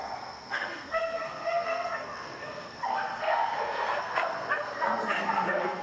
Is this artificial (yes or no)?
yes